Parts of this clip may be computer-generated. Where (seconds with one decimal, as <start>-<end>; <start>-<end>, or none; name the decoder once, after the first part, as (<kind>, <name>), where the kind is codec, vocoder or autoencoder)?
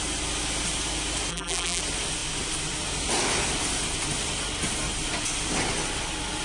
1.3-1.8 (vocoder, BigVGAN v2)